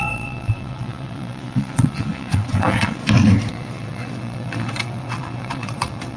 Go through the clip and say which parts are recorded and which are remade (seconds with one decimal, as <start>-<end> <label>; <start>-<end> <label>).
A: 0.0-3.0 remade; 3.0-3.5 recorded; 3.5-6.2 remade